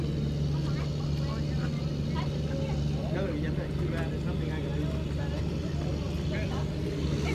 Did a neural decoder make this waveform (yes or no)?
no